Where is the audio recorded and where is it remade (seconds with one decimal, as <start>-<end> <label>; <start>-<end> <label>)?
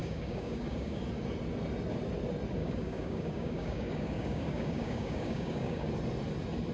0.0-1.0 remade; 1.0-2.6 recorded; 2.6-5.9 remade; 5.9-6.7 recorded